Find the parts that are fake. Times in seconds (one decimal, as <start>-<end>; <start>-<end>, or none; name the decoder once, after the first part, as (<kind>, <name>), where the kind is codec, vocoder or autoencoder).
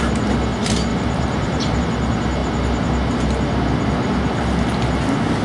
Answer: 0.9-1.8 (vocoder, BigVGAN v2)